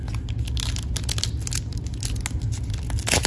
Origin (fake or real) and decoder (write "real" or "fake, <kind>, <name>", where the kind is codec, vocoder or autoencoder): real